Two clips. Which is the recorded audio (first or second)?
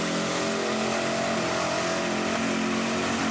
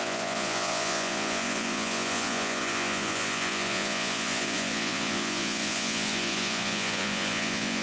first